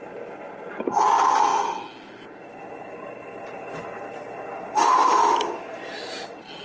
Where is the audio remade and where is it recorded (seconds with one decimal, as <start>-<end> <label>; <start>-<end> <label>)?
0.0-5.1 recorded; 5.1-5.7 remade; 5.7-6.6 recorded